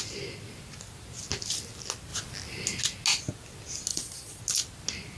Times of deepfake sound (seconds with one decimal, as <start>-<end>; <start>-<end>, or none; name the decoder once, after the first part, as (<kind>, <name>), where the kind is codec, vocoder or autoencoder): 3.9-4.4 (vocoder, Vocos)